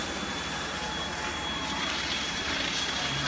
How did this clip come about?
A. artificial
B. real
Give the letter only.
A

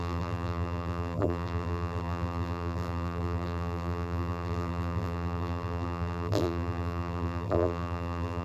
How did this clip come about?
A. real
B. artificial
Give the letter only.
B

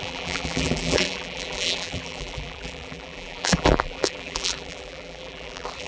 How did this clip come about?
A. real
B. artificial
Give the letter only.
B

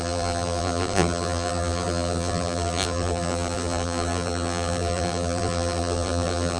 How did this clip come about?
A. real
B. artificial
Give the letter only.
B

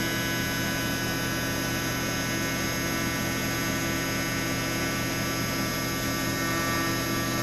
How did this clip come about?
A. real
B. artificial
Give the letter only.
A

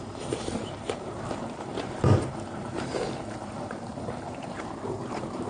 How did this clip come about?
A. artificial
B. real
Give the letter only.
A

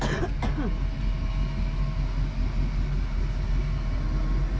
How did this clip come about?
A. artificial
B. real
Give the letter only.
B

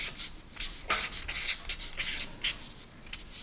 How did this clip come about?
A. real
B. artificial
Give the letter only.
A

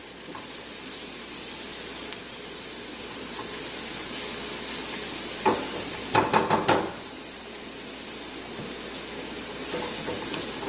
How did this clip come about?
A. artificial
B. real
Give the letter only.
B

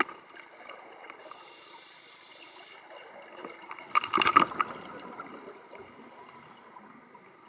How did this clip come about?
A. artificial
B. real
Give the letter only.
B